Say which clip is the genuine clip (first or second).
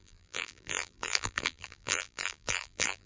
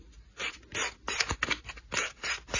second